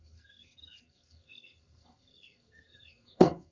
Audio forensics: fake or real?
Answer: fake